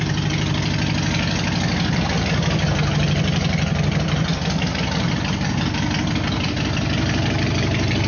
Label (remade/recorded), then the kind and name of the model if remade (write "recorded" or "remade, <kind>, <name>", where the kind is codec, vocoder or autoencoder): recorded